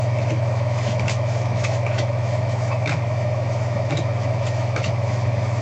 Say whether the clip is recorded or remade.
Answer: remade